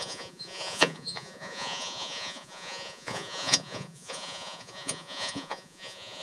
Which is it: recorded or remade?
remade